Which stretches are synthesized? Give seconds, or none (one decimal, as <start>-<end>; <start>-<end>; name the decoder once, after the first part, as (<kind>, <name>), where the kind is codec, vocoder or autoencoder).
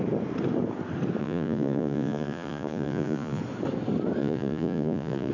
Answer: 1.2-3.4 (vocoder, Vocos); 4.2-5.3